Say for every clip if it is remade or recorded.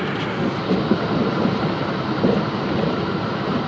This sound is recorded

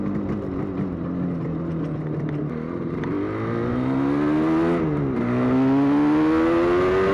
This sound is recorded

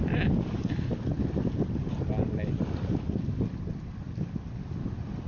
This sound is recorded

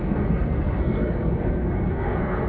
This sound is remade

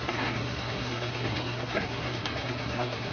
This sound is remade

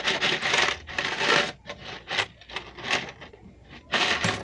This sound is recorded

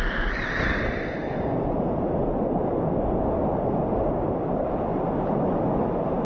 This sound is recorded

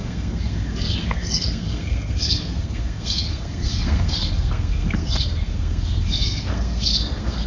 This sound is remade